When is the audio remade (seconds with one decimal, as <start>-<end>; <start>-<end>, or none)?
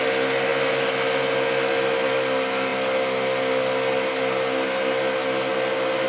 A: none